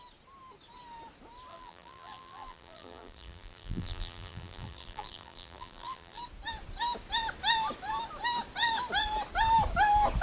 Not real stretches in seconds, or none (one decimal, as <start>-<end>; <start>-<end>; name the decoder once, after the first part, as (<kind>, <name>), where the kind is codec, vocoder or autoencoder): 1.5-6.2 (vocoder, BigVGAN v2)